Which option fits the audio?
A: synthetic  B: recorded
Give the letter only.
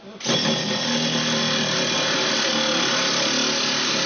B